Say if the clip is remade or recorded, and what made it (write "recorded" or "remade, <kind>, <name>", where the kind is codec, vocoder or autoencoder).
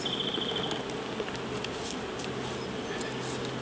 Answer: recorded